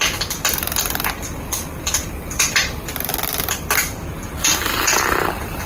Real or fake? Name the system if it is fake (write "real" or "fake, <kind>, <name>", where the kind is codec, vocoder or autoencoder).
real